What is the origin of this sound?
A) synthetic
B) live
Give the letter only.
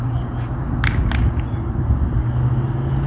B